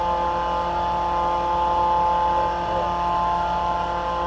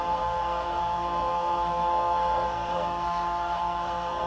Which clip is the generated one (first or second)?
second